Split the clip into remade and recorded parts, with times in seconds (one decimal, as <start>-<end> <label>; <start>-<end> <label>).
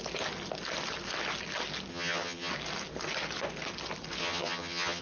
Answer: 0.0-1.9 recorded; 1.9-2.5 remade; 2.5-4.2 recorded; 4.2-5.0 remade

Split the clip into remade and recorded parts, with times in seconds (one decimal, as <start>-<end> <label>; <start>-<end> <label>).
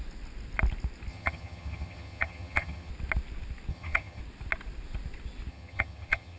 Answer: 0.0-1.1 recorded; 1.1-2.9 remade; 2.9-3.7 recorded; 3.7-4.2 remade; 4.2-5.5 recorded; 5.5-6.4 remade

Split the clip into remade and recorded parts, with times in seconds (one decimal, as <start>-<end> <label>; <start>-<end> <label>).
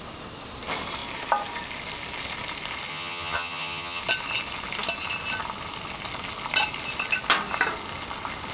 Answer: 0.0-2.9 recorded; 2.9-4.0 remade; 4.0-8.5 recorded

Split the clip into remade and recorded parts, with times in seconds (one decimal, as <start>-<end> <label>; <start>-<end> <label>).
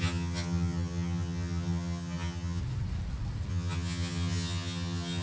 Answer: 0.0-2.6 remade; 2.6-3.5 recorded; 3.5-5.2 remade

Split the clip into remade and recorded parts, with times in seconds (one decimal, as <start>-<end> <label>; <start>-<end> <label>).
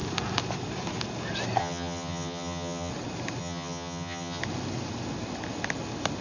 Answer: 0.0-1.6 recorded; 1.6-2.9 remade; 2.9-3.4 recorded; 3.4-4.4 remade; 4.4-6.2 recorded